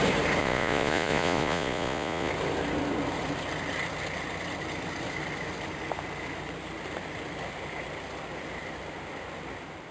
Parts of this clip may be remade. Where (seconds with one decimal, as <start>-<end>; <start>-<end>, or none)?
0.4-2.3